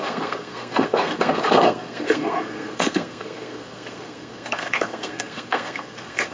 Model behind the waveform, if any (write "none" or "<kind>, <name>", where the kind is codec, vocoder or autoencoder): codec, SNAC